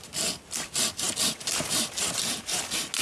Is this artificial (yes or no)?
no